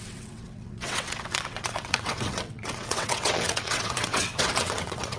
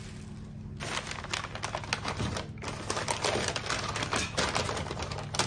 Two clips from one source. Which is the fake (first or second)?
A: first